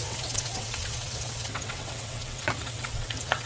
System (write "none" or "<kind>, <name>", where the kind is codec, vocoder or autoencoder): vocoder, WaveNeXt